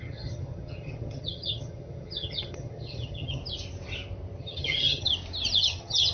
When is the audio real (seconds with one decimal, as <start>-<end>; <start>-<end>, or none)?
3.4-4.4; 5.1-5.6